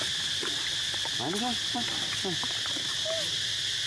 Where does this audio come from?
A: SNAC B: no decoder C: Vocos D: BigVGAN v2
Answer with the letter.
B